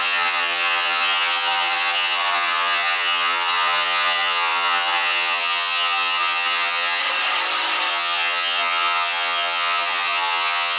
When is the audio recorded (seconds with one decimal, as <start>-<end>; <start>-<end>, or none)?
7.0-7.9